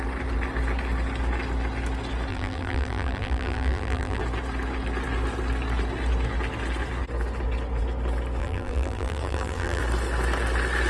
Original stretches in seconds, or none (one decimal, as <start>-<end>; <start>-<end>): 0.0-2.3; 4.2-8.4; 9.8-10.9